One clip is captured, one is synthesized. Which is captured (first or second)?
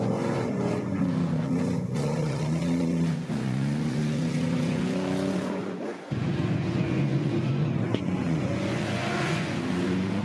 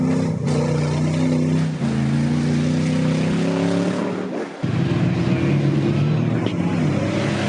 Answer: second